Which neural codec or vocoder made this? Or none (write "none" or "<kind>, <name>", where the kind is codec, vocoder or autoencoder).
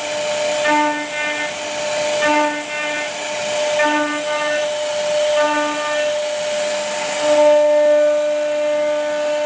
none